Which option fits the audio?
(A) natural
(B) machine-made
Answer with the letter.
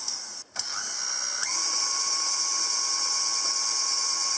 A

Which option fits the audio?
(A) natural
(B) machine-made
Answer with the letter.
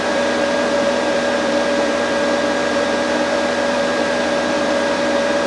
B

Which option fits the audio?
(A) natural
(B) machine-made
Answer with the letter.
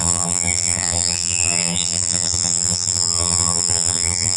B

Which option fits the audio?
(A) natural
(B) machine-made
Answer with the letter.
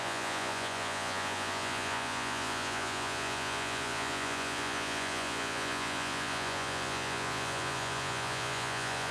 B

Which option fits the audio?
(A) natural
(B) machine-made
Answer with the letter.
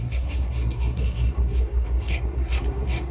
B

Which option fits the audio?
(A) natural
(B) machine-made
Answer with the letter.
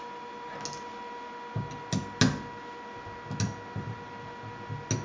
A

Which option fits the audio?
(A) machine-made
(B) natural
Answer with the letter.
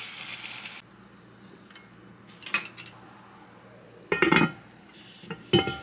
B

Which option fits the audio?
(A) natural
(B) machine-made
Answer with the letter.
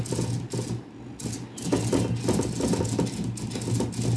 A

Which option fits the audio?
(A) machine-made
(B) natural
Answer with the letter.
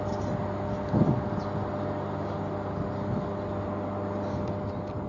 B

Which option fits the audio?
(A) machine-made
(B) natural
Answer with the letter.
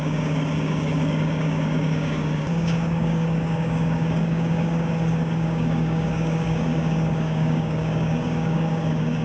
A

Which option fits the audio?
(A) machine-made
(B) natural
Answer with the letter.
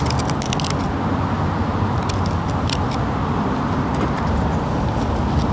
B